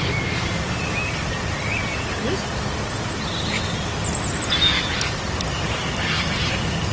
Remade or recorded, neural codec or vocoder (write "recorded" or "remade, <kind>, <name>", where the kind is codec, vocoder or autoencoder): recorded